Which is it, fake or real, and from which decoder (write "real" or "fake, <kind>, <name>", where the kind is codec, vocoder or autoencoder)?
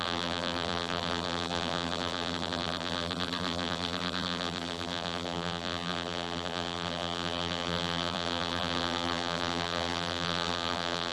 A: fake, vocoder, BigVGAN v2